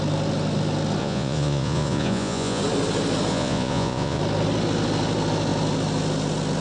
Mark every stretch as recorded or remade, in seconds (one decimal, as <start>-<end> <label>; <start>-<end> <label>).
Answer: 0.0-1.0 recorded; 1.0-2.6 remade; 2.6-3.3 recorded; 3.3-4.2 remade; 4.2-6.6 recorded